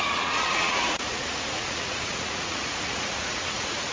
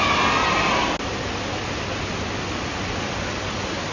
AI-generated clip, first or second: first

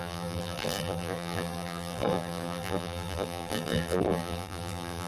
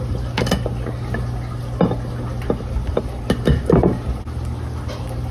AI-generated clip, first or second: first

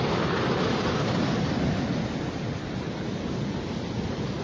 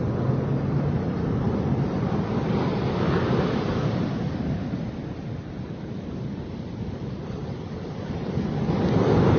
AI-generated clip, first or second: second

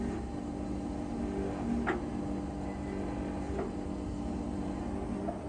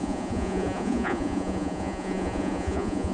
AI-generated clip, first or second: second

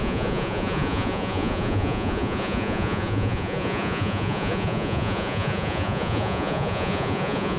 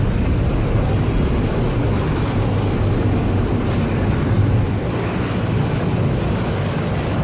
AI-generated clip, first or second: first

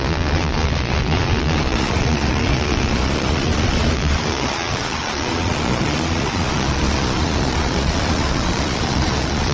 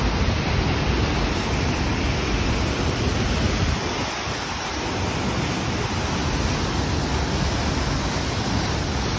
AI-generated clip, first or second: first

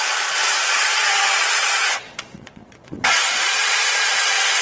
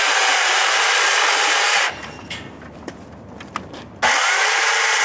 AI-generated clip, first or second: first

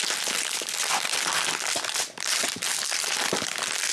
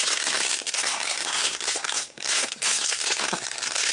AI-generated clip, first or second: second